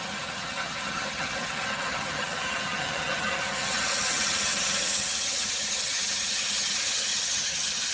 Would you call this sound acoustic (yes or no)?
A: no